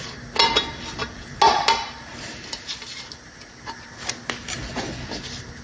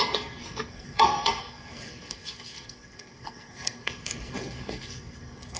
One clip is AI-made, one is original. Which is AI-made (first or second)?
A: second